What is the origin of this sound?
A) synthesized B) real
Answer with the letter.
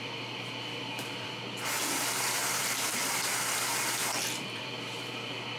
A